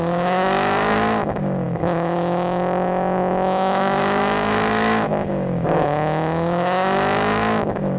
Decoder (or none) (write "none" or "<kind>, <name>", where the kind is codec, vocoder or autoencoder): codec, DAC